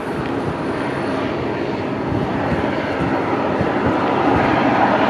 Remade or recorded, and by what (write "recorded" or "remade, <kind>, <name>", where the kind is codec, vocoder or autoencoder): recorded